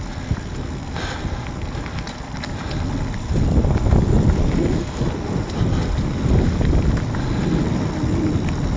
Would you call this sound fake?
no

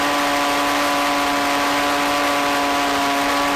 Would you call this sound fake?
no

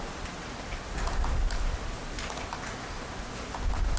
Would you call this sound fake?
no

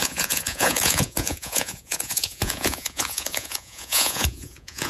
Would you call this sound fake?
yes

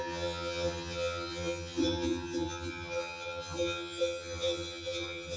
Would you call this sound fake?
yes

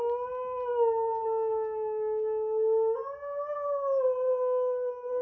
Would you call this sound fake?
no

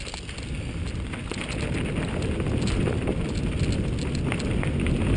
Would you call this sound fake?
no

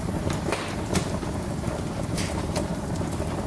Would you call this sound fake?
yes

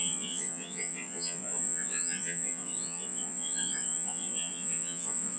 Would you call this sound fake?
yes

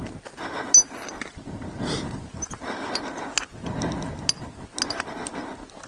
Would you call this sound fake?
no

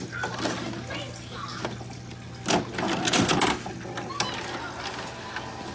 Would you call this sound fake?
no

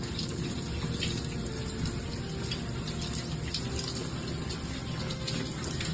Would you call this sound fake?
no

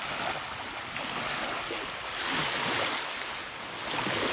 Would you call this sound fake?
no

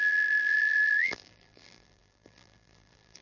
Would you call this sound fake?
yes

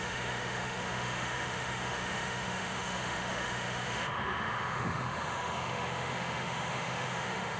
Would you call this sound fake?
yes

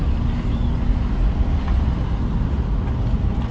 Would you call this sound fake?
no